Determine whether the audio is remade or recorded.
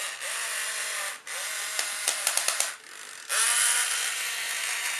recorded